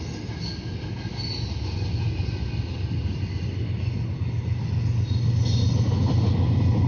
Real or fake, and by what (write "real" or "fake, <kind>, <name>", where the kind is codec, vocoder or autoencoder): real